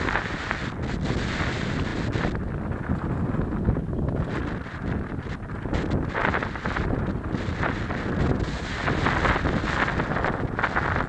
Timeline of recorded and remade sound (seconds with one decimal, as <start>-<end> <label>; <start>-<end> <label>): 0.0-11.1 recorded